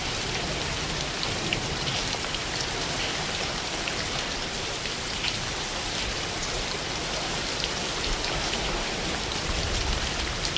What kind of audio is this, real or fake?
fake